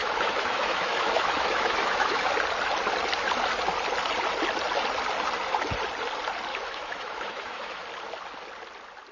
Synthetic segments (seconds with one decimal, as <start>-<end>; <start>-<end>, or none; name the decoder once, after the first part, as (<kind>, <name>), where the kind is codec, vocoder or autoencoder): 0.0-2.3 (autoencoder, DAC-VAE); 6.5-7.8